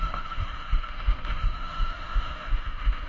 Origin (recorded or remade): remade